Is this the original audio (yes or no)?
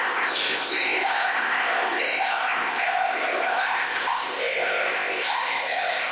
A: no